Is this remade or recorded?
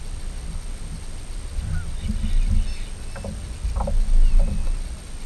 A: recorded